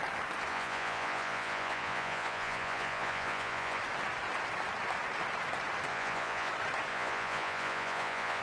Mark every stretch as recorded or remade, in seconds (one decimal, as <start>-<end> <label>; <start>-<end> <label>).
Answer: 0.0-0.5 recorded; 0.5-3.8 remade; 3.8-5.9 recorded; 5.9-6.5 remade; 6.5-6.9 recorded; 6.9-8.4 remade